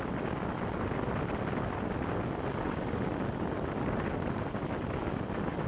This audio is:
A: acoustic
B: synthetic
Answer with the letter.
A